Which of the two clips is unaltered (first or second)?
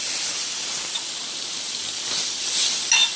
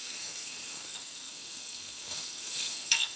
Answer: first